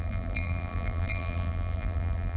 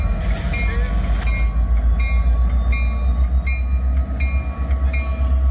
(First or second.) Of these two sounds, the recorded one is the second